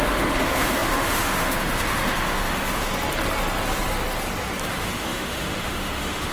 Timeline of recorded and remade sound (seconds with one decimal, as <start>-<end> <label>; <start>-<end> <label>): 0.0-2.9 remade; 2.9-4.6 recorded; 4.6-6.3 remade